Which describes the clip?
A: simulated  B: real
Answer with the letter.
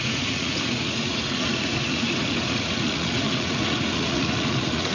A